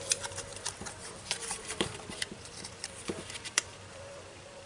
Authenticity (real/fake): fake